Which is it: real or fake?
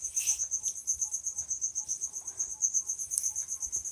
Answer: real